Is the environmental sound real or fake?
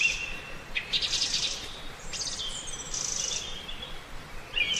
real